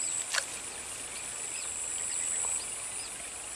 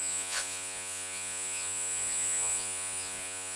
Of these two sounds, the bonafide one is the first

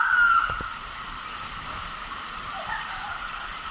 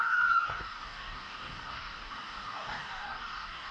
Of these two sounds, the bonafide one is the first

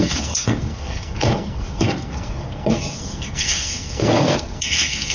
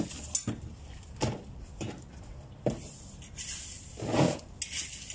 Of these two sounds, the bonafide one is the second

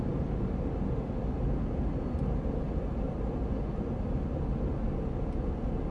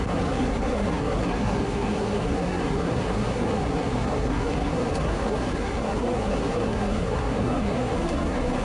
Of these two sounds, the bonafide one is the first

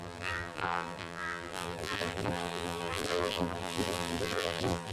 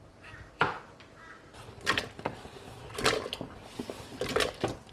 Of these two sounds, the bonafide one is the second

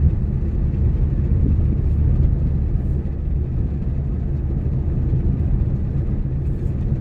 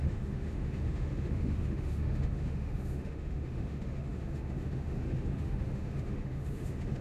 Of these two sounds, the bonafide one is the first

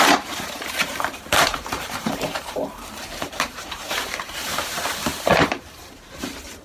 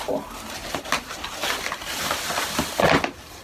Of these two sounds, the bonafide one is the second